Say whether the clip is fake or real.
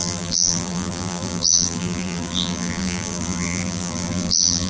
fake